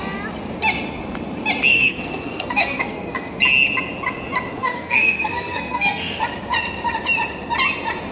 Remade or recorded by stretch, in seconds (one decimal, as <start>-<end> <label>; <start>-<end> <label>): 0.0-1.7 recorded; 1.7-3.3 remade; 3.3-4.6 recorded; 4.6-6.2 remade; 6.2-8.1 recorded